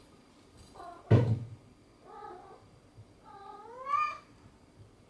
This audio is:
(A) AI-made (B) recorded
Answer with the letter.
B